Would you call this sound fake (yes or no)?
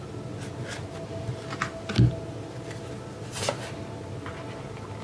no